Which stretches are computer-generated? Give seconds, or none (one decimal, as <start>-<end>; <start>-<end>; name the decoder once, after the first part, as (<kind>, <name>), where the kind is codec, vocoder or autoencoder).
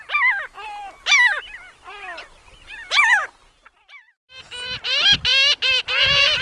2.4-4.4 (vocoder, BigVGAN v2)